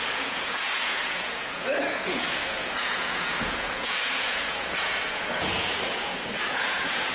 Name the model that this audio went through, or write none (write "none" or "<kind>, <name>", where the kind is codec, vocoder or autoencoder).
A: vocoder, Vocos